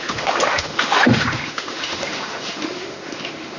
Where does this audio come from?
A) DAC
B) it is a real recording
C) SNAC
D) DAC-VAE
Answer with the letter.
D